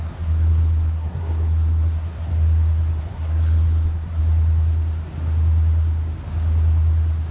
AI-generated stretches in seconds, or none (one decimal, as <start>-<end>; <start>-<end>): 0.0-2.3; 3.0-4.2